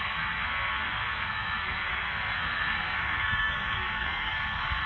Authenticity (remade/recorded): remade